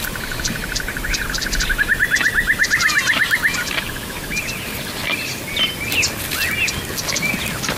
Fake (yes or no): no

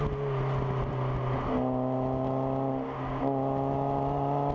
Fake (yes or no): no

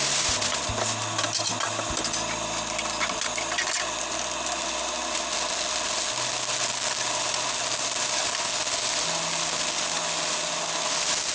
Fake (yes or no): no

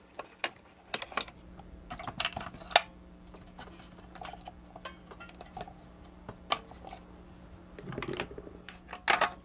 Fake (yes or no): no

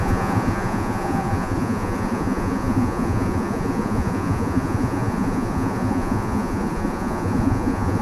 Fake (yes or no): yes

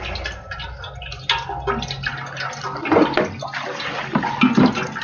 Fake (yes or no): no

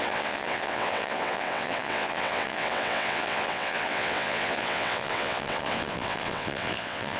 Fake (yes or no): yes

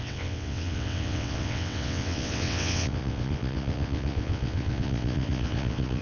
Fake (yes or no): yes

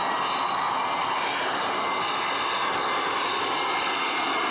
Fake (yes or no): no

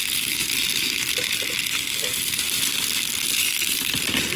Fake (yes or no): no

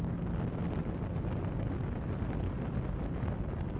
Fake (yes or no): no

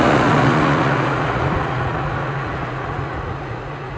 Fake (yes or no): yes